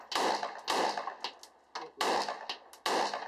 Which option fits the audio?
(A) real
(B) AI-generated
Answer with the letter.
A